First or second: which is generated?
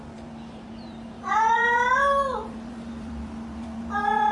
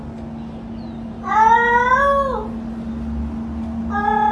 first